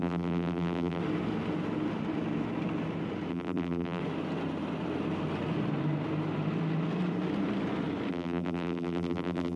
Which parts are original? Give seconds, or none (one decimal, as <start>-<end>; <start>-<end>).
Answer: 1.0-3.3; 4.0-8.1